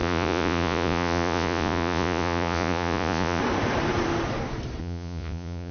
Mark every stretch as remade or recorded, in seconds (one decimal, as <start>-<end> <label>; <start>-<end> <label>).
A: 0.0-3.4 remade; 3.4-4.8 recorded; 4.8-5.7 remade